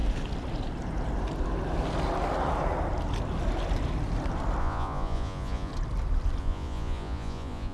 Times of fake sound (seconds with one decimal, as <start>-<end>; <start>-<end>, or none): 4.6-5.7; 6.4-7.7